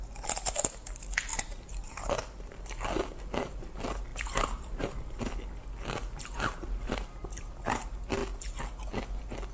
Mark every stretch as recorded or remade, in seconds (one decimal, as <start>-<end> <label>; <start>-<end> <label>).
0.0-1.3 recorded; 1.3-2.1 remade; 2.1-4.1 recorded; 4.1-5.0 remade; 5.0-9.5 recorded